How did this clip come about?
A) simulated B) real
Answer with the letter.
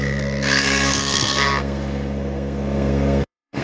A